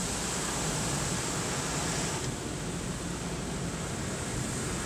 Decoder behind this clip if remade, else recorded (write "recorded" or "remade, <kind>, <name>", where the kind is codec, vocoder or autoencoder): recorded